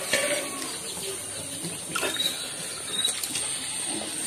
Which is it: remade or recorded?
recorded